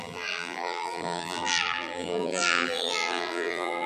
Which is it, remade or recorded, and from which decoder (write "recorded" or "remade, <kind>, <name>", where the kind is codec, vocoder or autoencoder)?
remade, vocoder, BigVGAN v2